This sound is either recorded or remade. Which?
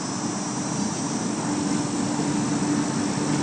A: recorded